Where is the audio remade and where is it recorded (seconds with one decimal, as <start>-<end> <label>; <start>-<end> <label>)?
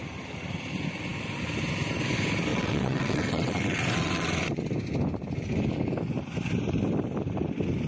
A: 0.0-2.5 recorded; 2.5-4.6 remade; 4.6-7.9 recorded